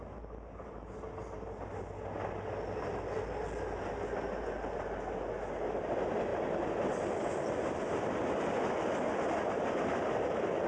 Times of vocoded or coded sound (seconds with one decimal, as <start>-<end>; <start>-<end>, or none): none